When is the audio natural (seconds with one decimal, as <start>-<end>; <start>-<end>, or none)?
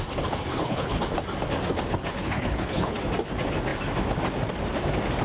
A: 0.0-0.5; 1.0-2.1; 3.0-5.2